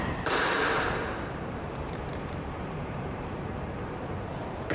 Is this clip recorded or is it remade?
remade